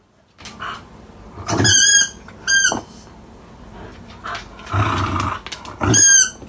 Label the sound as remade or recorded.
recorded